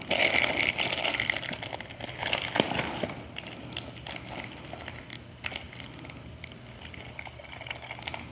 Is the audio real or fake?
real